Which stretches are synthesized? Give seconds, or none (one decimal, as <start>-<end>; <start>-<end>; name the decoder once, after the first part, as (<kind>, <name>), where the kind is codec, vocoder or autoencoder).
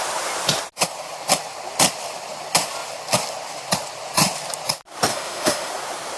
5.1-5.7 (autoencoder, DAC-VAE)